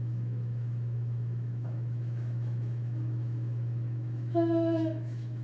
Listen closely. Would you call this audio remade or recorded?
remade